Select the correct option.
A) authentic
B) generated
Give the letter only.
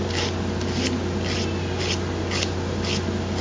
A